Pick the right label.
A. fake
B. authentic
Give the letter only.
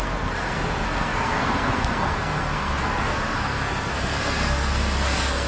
A